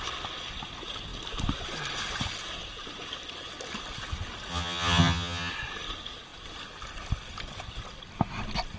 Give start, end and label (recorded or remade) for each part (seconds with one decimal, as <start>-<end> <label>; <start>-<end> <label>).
0.0-4.5 recorded; 4.5-5.5 remade; 5.5-8.8 recorded

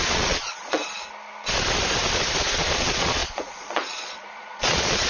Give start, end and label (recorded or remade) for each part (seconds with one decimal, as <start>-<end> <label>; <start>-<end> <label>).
0.0-0.8 remade; 0.8-2.4 recorded; 2.4-5.1 remade

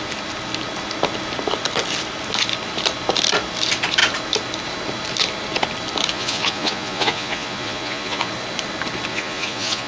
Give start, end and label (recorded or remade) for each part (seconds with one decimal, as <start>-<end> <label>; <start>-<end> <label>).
0.0-6.1 recorded; 6.1-8.3 remade; 8.3-9.1 recorded; 9.1-9.9 remade

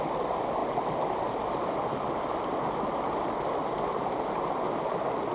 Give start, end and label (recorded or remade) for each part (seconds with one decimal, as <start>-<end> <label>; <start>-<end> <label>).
0.0-5.3 recorded

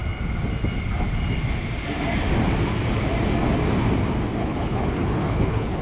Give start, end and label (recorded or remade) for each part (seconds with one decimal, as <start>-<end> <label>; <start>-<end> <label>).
0.0-4.4 recorded; 4.4-5.8 remade